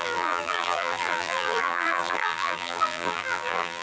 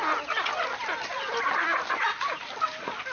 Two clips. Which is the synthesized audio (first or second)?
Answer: first